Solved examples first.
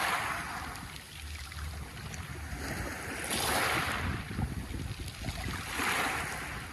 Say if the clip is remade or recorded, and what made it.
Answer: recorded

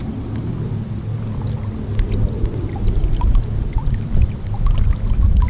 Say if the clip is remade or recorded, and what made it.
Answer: recorded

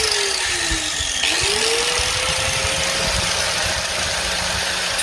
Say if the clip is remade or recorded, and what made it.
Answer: recorded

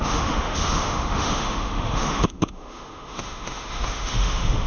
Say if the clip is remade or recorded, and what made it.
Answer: remade, autoencoder, DAC-VAE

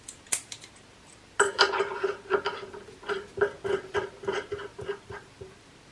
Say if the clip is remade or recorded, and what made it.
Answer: recorded